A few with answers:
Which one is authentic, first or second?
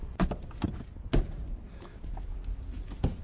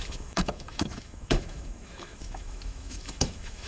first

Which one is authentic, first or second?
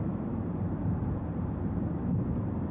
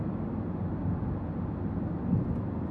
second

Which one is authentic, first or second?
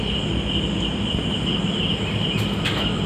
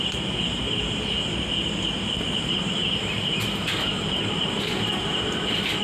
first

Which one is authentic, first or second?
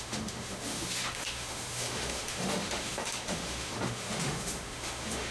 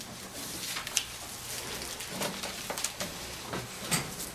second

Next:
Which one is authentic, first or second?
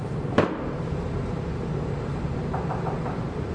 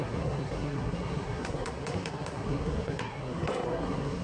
first